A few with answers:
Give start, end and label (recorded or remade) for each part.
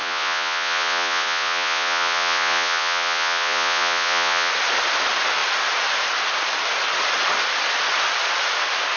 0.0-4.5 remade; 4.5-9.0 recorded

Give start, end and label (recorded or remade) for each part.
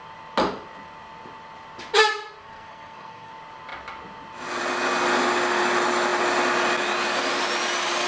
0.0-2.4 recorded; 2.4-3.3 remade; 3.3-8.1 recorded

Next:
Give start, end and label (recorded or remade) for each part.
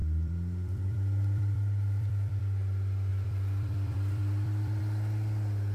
0.0-2.4 remade; 2.4-3.1 recorded; 3.1-4.8 remade; 4.8-5.7 recorded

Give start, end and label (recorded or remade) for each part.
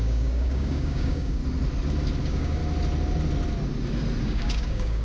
0.0-1.4 remade; 1.4-2.2 recorded; 2.2-2.6 remade; 2.6-4.2 recorded; 4.2-5.0 remade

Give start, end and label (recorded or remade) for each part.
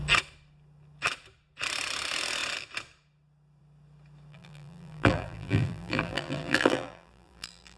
0.0-4.3 recorded; 4.3-7.8 remade